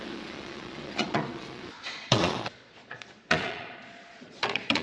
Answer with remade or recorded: remade